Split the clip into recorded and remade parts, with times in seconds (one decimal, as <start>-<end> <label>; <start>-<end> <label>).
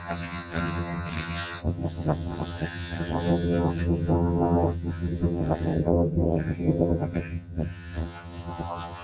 0.0-9.0 remade